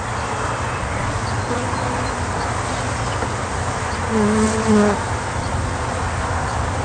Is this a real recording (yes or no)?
yes